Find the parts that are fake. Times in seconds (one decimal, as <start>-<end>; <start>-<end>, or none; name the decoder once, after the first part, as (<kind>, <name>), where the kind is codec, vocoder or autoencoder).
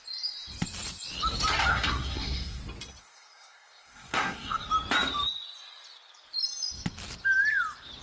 1.7-2.6 (codec, SNAC); 3.0-4.7